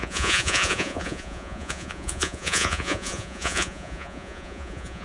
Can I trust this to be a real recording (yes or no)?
no